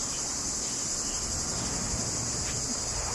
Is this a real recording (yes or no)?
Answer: yes